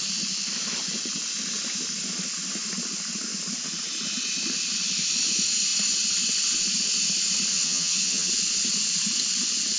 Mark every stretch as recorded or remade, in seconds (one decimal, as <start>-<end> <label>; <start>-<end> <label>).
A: 0.0-7.5 recorded; 7.5-8.3 remade; 8.3-9.8 recorded